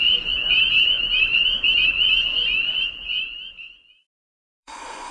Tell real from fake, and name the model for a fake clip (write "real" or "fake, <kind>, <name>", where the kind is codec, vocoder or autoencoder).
fake, vocoder, Vocos